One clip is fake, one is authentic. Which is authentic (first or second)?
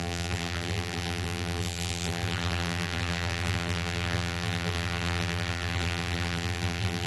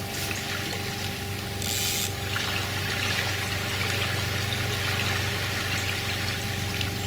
second